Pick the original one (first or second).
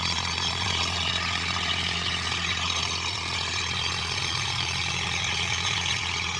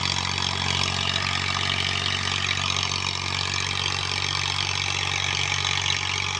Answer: second